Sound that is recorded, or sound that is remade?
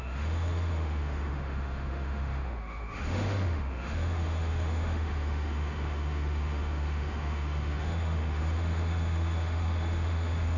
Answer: remade